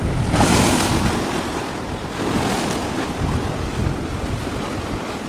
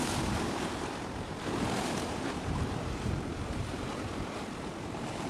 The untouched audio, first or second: first